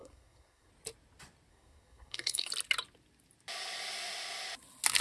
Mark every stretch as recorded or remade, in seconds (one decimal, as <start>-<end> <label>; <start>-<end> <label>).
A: 0.0-0.7 remade; 0.7-1.5 recorded; 1.5-2.5 remade; 2.5-5.0 recorded